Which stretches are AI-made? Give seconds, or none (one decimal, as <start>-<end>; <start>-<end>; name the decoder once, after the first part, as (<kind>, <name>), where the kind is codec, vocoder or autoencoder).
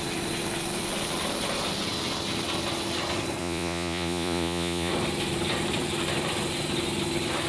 3.4-4.9 (vocoder, Vocos)